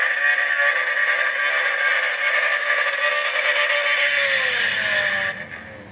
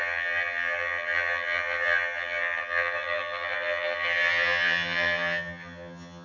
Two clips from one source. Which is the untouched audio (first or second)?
first